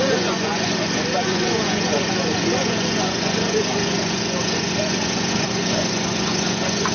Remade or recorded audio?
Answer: remade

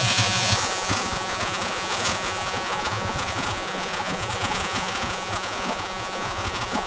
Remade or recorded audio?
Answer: remade